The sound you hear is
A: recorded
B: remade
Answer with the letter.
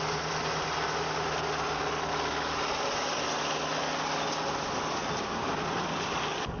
A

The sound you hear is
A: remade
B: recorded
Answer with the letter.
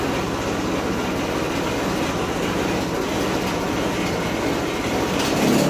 B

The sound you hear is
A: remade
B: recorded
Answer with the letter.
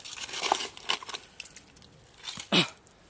B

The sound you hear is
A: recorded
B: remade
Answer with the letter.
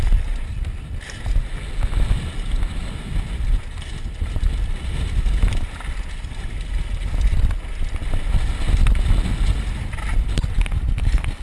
A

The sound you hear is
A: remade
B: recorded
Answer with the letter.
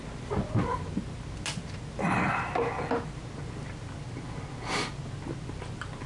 B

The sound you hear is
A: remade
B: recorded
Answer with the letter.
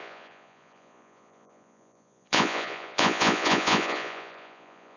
A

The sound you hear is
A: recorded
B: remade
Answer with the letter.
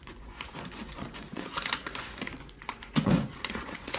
B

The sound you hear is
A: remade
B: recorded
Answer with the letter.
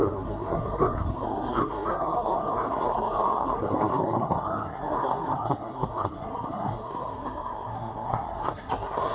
A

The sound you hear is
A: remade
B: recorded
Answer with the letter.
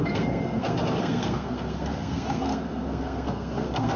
A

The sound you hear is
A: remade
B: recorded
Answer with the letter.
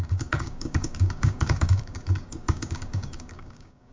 A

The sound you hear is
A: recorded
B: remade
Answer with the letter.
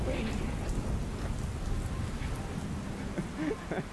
A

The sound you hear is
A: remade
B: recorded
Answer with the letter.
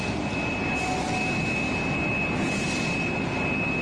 B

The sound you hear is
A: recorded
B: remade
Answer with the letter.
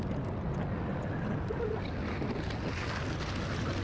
A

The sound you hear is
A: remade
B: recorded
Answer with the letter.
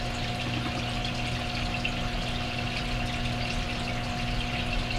B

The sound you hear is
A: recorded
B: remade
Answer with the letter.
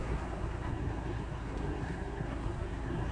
B